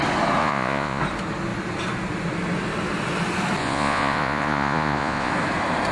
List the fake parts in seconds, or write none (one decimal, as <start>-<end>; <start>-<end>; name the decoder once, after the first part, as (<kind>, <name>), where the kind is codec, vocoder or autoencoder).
0.4-1.0 (vocoder, Vocos); 3.6-5.3